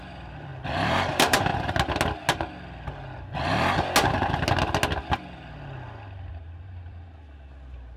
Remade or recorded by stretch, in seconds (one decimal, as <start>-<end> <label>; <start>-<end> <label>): 0.0-0.5 remade; 0.5-1.1 recorded; 1.1-1.5 remade; 1.5-6.3 recorded; 6.3-8.0 remade